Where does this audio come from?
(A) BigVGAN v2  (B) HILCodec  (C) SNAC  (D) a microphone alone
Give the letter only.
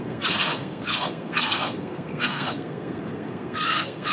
C